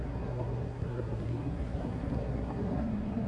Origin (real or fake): fake